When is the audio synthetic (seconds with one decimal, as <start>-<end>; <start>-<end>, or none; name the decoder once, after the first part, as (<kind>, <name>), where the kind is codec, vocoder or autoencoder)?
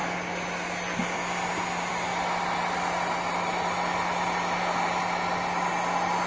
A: none